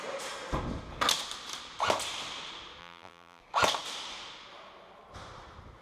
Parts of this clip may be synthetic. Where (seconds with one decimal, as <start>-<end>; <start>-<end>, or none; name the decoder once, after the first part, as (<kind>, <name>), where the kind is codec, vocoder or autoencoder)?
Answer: 2.8-3.4 (vocoder, BigVGAN v2)